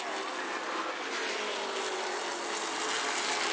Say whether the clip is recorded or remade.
recorded